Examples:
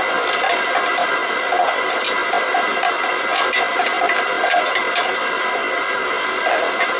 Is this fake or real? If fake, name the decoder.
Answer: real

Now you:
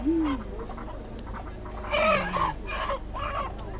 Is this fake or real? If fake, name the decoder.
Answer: real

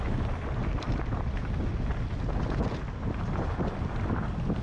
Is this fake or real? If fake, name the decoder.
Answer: real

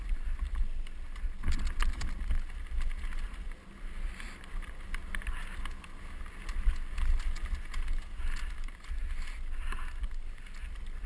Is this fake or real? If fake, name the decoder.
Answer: real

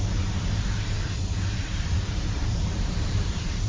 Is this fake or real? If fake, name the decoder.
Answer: fake, vocoder, BigVGAN v2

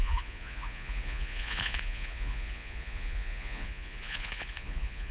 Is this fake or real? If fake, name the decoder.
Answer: fake, vocoder, Vocos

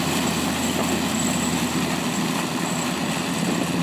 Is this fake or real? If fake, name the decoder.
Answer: real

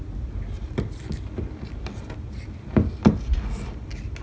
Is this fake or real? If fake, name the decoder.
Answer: real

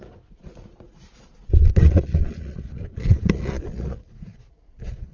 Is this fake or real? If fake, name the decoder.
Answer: fake, vocoder, Vocos